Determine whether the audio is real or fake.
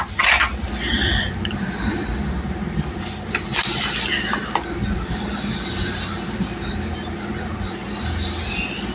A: real